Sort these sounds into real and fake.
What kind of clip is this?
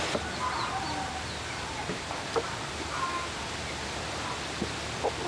real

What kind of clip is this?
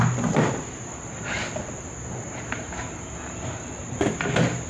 real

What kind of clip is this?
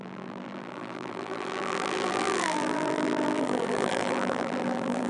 fake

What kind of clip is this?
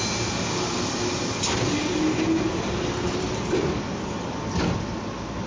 real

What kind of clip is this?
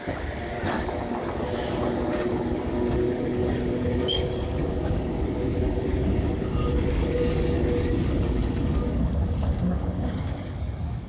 fake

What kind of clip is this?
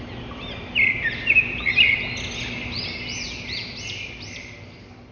real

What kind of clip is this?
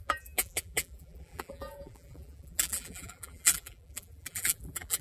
fake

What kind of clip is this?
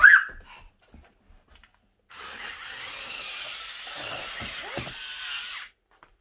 real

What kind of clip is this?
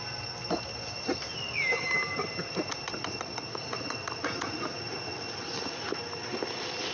real